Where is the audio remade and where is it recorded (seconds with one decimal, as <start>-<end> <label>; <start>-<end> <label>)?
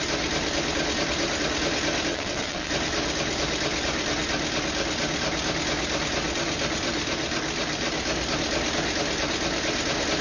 0.0-2.1 recorded; 2.1-2.7 remade; 2.7-10.2 recorded